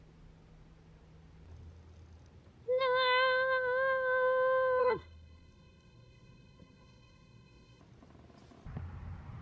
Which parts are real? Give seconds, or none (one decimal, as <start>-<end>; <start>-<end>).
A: 0.0-4.8; 7.8-9.4